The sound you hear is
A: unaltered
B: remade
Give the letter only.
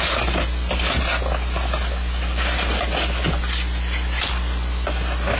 A